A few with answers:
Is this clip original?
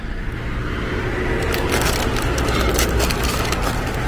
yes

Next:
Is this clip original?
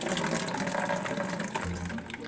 yes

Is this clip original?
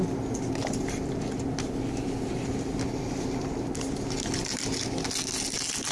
yes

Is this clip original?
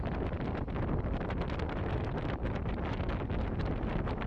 yes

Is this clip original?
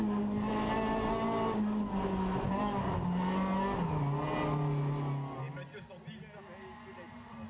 yes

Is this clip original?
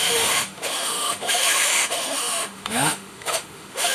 no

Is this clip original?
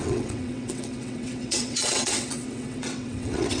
no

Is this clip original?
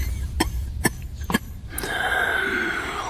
no